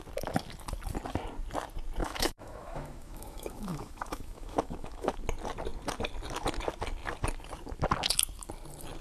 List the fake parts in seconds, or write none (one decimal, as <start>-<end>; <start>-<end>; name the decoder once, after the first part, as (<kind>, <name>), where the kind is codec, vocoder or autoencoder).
2.0-5.1 (autoencoder, DAC-VAE)